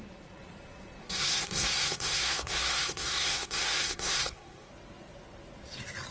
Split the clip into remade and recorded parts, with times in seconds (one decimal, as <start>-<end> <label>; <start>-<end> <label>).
0.0-1.0 recorded; 1.0-4.7 remade; 4.7-6.1 recorded